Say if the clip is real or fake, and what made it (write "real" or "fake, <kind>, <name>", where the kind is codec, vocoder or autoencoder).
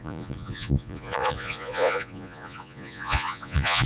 fake, vocoder, Vocos